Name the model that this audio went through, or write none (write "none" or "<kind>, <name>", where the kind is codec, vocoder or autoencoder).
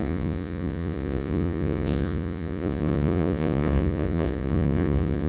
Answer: vocoder, Vocos